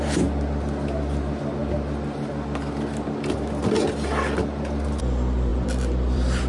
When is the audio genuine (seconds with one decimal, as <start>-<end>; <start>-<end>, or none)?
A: 0.0-5.5